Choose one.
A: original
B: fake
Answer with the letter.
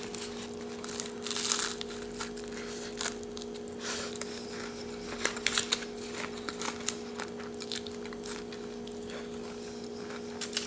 A